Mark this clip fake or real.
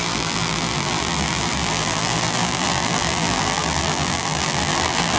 fake